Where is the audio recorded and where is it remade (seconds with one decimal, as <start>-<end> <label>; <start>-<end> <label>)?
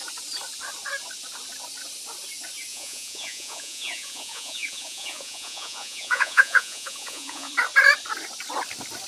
0.0-2.7 recorded; 2.7-7.5 remade; 7.5-9.1 recorded